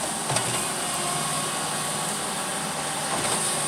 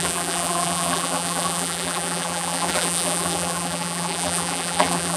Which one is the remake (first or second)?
second